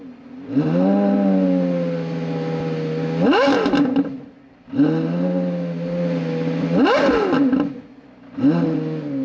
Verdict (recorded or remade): recorded